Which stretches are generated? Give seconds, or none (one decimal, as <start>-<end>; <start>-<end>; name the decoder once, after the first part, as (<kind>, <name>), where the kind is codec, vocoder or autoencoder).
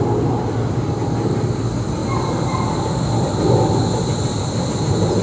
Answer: 0.0-5.2 (vocoder, BigVGAN v2)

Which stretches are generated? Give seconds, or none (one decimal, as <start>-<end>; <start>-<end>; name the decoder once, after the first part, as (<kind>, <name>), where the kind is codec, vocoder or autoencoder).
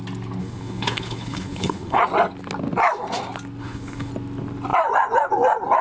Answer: 0.4-2.0 (codec, HILCodec); 3.6-4.1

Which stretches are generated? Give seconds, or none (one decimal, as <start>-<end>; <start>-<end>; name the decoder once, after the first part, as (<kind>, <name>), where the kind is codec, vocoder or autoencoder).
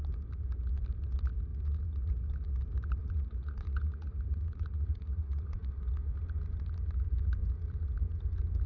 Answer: 1.5-2.1 (vocoder, Vocos); 3.0-5.7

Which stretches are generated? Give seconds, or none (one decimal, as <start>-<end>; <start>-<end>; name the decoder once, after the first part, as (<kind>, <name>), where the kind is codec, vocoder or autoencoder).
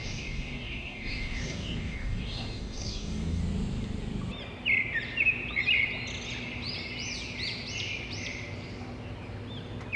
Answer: 0.0-3.4 (codec, DAC)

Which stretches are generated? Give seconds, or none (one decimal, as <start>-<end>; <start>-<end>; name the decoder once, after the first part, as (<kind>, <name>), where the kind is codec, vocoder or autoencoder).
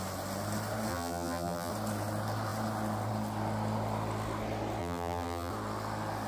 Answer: 0.9-1.7 (vocoder, BigVGAN v2); 4.8-5.5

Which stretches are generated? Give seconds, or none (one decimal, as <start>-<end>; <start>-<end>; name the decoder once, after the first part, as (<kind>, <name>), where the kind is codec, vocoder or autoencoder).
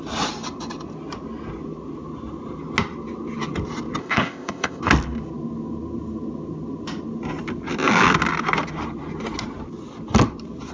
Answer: 4.0-4.8 (codec, ZipCodec)